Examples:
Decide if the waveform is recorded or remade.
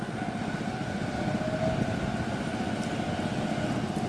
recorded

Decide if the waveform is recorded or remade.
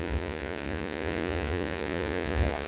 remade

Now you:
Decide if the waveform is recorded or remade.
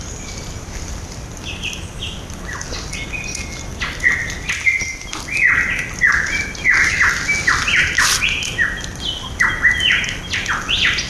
recorded